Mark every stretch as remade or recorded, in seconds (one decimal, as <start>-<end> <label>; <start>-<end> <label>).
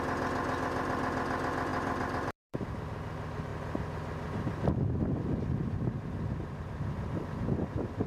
0.0-1.7 recorded; 1.7-2.6 remade; 2.6-8.1 recorded